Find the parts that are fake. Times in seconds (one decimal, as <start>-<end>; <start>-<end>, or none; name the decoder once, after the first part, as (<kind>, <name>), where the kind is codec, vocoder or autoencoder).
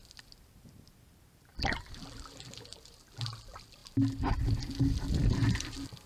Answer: 1.5-2.9 (vocoder, BigVGAN v2)